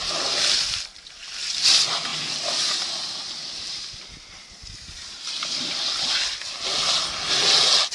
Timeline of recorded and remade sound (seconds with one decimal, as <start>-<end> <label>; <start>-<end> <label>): 0.0-7.9 recorded